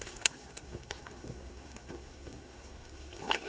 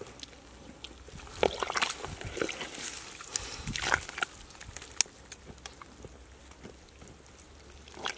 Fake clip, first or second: first